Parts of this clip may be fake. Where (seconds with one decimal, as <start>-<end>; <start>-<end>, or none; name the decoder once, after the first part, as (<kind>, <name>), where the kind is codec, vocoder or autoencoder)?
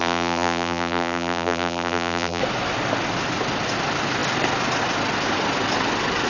0.0-2.4 (vocoder, BigVGAN v2)